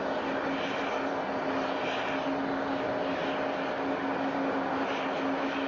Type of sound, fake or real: real